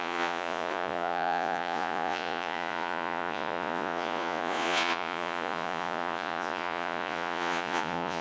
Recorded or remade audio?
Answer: remade